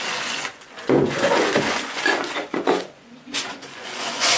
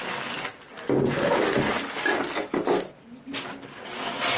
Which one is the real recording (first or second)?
second